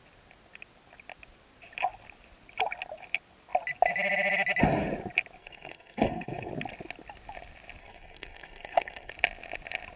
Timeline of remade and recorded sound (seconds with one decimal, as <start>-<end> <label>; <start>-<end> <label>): 0.0-5.4 recorded; 5.4-6.5 remade; 6.5-7.8 recorded; 7.8-9.1 remade; 9.1-10.0 recorded